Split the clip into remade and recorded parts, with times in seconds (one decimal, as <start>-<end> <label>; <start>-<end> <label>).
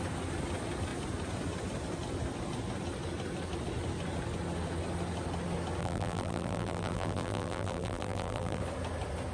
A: 0.0-5.8 recorded; 5.8-8.6 remade; 8.6-9.3 recorded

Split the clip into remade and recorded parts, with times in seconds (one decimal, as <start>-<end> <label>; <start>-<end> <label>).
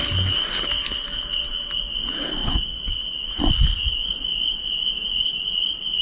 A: 0.0-2.4 recorded; 2.4-6.0 remade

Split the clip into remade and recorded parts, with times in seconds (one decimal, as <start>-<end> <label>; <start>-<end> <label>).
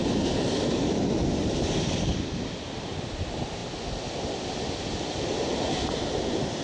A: 0.0-0.5 remade; 0.5-6.6 recorded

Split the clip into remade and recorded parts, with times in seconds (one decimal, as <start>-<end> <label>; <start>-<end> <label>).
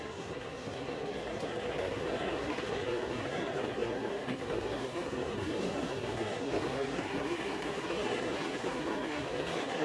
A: 0.0-9.8 remade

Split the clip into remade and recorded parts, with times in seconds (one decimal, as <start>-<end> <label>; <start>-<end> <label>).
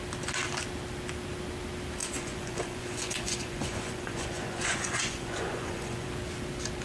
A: 0.0-2.0 recorded; 2.0-6.1 remade; 6.1-6.8 recorded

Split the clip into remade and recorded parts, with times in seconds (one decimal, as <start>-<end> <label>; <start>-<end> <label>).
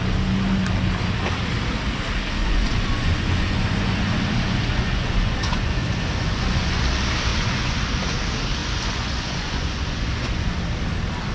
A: 0.0-2.4 recorded; 2.4-6.8 remade; 6.8-7.3 recorded; 7.3-7.8 remade; 7.8-8.6 recorded; 8.6-10.6 remade; 10.6-11.3 recorded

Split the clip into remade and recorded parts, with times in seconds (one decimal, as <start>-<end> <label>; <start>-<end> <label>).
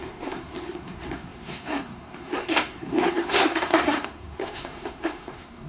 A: 0.0-5.7 remade